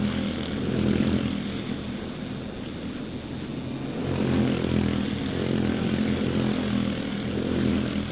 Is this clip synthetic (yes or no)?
no